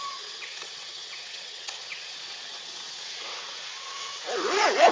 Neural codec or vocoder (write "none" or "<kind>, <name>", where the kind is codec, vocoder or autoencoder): vocoder, WaveNeXt